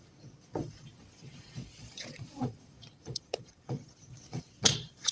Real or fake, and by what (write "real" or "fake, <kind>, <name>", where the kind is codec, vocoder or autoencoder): fake, vocoder, Vocos